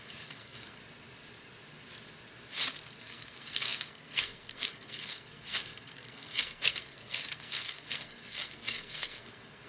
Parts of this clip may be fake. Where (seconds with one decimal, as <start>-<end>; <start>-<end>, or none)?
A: 0.0-0.8; 3.0-9.7